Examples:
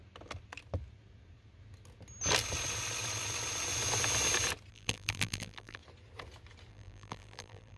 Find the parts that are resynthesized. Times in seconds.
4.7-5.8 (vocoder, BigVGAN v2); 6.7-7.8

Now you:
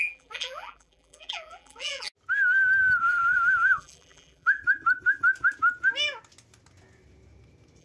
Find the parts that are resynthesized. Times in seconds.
0.0-2.1 (vocoder, BigVGAN v2); 3.0-4.6

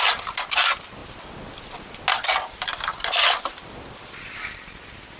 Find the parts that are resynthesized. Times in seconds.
none

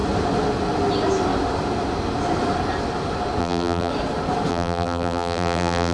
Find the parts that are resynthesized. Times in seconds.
3.4-3.9 (vocoder, BigVGAN v2); 4.5-5.9

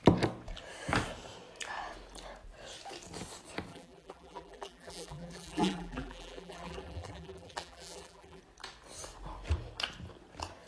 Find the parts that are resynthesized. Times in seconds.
3.7-8.4 (vocoder, BigVGAN v2)

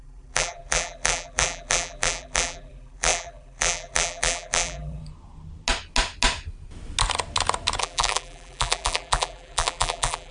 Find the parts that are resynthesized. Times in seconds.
0.0-5.0 (vocoder, BigVGAN v2); 7.8-10.3

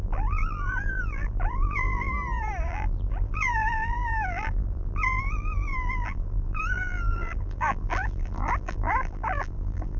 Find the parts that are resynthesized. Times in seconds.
0.0-2.1 (vocoder, BigVGAN v2); 2.7-10.0

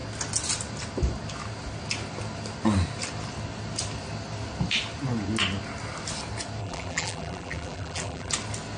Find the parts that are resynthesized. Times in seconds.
6.6-8.3 (vocoder, BigVGAN v2)